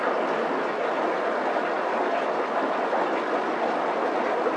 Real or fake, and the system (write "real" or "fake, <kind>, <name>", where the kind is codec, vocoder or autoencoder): real